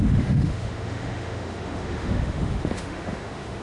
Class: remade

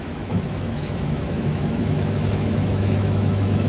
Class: remade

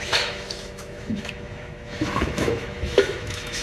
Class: remade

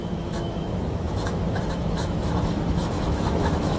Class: remade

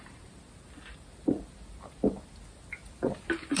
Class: recorded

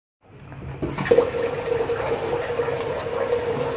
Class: recorded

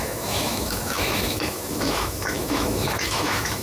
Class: remade